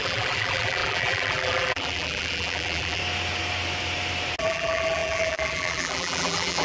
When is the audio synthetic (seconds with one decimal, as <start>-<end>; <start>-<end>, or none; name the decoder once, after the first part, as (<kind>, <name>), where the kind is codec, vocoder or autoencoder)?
0.0-3.0 (vocoder, BigVGAN v2); 4.4-6.6